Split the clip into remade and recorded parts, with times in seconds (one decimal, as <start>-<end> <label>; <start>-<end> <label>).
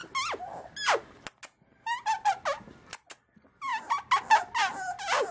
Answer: 0.0-5.3 recorded